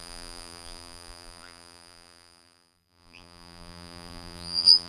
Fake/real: fake